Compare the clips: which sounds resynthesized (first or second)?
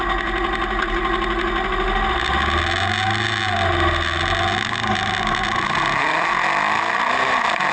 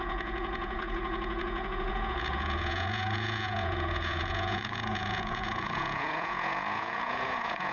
second